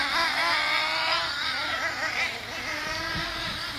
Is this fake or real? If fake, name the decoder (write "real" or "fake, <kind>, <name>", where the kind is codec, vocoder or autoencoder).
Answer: real